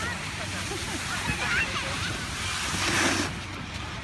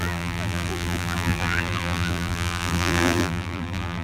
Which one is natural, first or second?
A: first